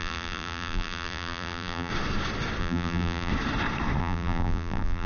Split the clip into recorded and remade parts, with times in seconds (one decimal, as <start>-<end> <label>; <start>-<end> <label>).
0.0-1.9 remade; 1.9-2.6 recorded; 2.6-3.3 remade; 3.3-4.0 recorded; 4.0-5.1 remade